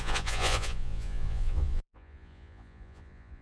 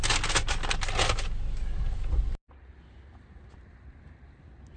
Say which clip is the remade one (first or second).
first